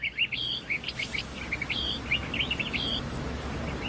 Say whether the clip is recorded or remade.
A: recorded